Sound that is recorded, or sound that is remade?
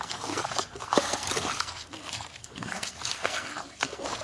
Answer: remade